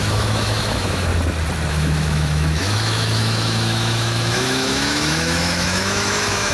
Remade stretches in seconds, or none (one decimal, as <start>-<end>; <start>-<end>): 0.0-1.1; 1.7-6.5